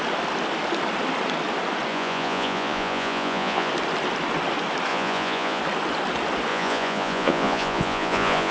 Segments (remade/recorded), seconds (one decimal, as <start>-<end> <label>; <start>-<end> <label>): 0.0-1.9 recorded; 1.9-3.7 remade; 3.7-4.9 recorded; 4.9-5.6 remade; 5.6-6.5 recorded; 6.5-8.5 remade